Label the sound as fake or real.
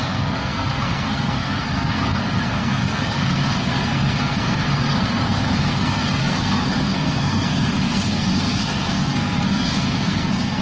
fake